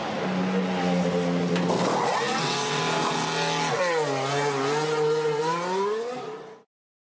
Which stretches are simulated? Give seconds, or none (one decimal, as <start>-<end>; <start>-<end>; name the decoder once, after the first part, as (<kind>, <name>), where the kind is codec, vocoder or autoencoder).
2.3-2.8 (vocoder, WaveNeXt)